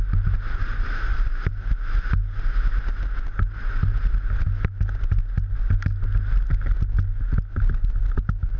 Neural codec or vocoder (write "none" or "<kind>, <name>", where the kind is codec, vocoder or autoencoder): none